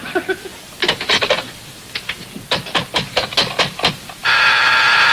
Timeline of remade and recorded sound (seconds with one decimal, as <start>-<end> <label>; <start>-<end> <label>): 0.0-4.2 recorded; 4.2-5.1 remade